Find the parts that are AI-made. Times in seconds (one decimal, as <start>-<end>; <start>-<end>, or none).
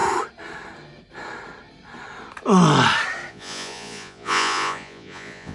3.3-5.5